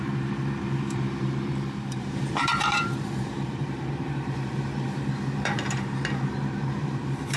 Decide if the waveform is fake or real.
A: fake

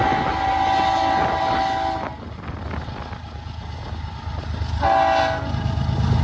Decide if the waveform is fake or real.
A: real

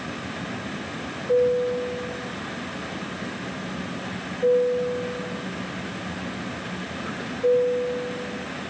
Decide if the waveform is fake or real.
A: real